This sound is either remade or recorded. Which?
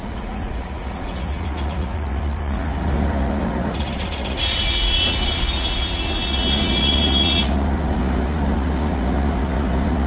remade